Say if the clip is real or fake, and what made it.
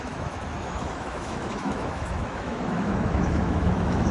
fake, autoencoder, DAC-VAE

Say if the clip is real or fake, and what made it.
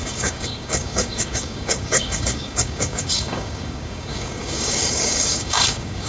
fake, codec, DAC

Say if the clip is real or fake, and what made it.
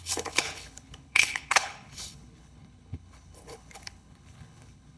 fake, codec, HILCodec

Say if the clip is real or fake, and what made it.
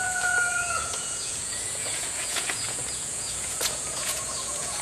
fake, vocoder, Vocos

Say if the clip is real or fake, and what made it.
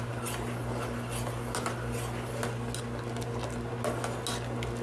real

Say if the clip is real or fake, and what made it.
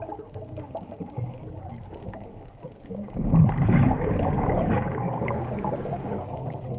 fake, codec, DAC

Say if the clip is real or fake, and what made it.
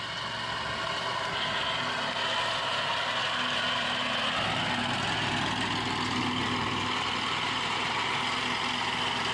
real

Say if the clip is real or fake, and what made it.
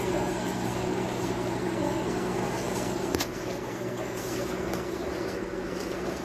fake, codec, SNAC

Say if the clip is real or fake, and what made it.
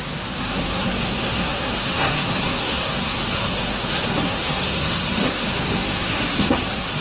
fake, codec, SNAC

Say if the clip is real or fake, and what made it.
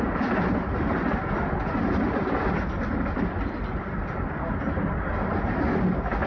real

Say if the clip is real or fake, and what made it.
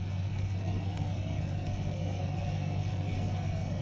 fake, codec, SNAC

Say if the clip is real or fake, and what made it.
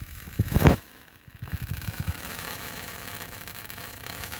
fake, autoencoder, DAC-VAE